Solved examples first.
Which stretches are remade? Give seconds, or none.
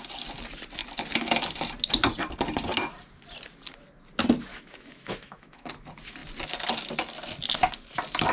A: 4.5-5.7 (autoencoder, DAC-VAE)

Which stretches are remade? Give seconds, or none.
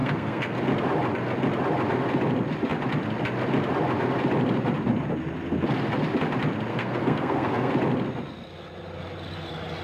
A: 0.0-0.6 (codec, SNAC); 6.7-7.7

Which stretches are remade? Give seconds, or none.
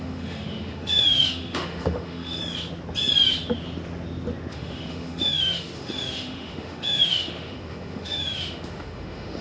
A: 0.0-2.4 (autoencoder, DAC-VAE); 4.5-9.4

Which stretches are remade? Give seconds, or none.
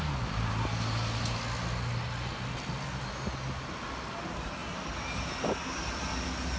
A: none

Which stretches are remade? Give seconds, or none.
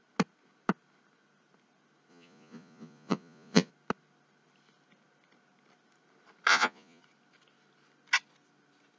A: 2.1-3.7 (vocoder, Vocos); 6.5-7.0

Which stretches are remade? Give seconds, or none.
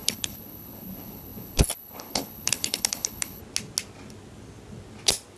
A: 0.0-3.4 (codec, HILCodec)